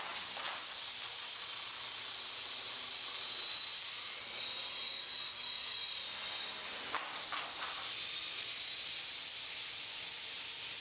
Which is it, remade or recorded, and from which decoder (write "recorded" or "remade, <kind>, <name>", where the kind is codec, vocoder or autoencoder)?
recorded